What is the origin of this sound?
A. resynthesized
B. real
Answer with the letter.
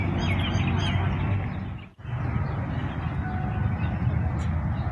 B